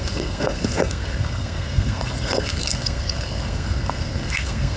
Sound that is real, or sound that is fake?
fake